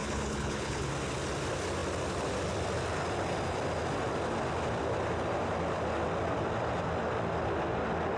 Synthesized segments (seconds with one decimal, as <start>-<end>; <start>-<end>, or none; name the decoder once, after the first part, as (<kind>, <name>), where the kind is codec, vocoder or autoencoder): 0.0-0.9 (codec, HILCodec)